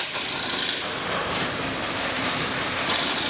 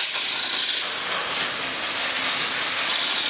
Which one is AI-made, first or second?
first